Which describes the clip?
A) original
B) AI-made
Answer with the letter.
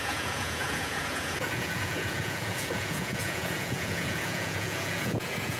B